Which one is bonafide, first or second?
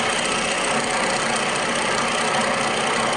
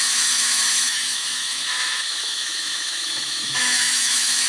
first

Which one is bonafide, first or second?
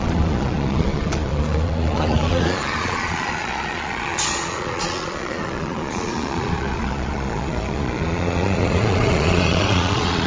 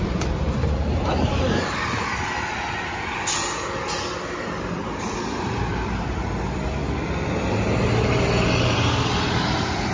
second